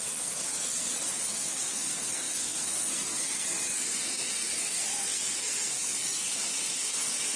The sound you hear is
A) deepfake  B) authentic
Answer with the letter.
A